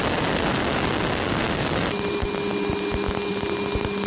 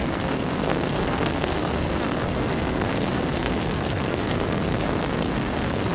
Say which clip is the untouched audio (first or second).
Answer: first